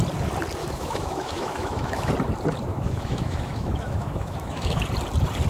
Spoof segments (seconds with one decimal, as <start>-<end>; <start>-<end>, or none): 0.6-2.1; 2.7-4.8